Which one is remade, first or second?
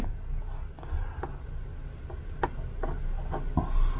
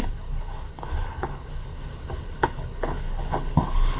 second